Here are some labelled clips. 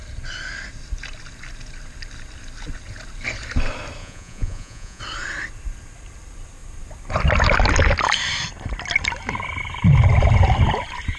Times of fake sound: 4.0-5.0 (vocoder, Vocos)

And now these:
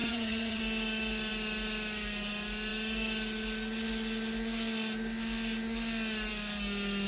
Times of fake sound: 0.0-0.6 (vocoder, HiFi-GAN)